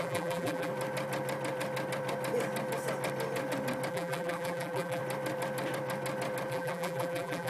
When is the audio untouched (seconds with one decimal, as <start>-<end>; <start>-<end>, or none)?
0.7-3.9; 5.0-6.5